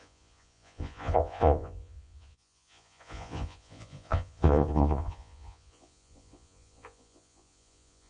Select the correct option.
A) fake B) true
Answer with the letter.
A